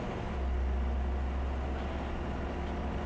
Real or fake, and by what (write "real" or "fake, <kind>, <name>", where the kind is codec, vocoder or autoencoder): real